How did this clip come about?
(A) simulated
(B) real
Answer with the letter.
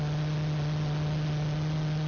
B